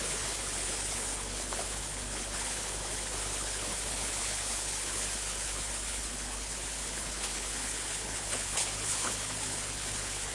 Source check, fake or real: fake